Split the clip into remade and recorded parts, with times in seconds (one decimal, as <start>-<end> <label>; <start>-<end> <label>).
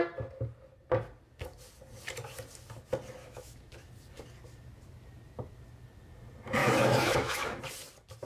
0.0-3.2 recorded; 3.2-3.9 remade; 3.9-6.6 recorded; 6.6-7.6 remade; 7.6-8.2 recorded